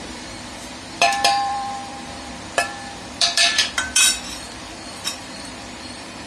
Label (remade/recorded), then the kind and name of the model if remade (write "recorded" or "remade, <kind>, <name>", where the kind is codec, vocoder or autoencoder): remade, vocoder, BigVGAN v2